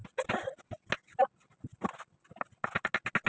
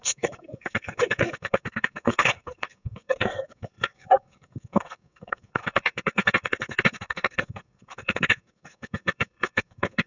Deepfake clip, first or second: second